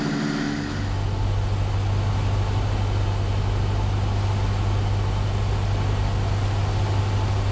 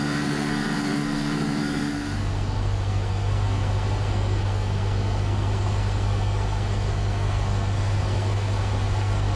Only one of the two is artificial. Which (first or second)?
second